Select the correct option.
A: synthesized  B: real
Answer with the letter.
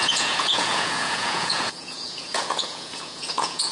A